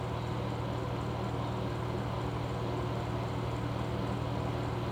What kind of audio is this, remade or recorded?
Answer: recorded